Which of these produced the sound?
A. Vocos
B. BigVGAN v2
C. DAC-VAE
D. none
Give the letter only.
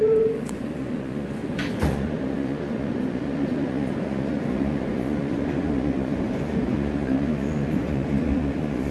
A